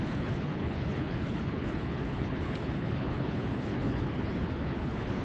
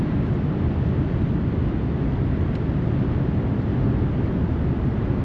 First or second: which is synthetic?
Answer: first